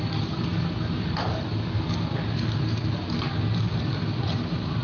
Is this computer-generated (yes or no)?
no